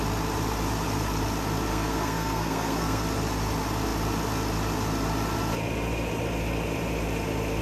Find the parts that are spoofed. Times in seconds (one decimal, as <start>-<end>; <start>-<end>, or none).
1.7-3.0